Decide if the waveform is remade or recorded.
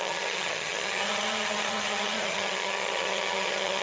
remade